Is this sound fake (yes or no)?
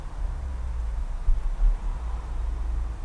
no